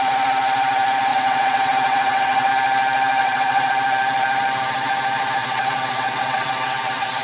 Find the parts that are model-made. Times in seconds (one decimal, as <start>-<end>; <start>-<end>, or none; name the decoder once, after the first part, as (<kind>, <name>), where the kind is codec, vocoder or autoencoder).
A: 1.1-2.5 (vocoder, WaveNeXt); 3.2-3.7; 5.4-7.2